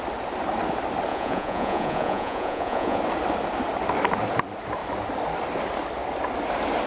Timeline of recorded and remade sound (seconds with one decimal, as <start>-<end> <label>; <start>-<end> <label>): 0.0-1.1 recorded; 1.1-3.0 remade; 3.0-6.9 recorded